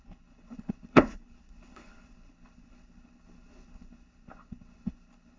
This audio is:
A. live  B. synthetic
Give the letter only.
B